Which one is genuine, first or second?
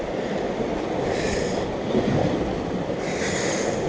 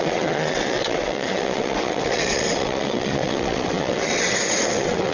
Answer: first